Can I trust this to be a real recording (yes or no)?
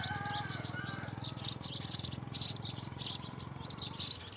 yes